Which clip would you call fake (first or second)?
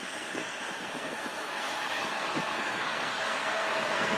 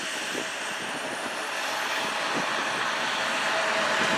first